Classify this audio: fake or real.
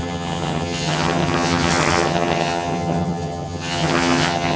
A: fake